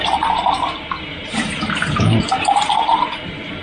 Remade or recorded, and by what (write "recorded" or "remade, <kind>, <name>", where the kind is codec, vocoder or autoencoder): remade, vocoder, BigVGAN v2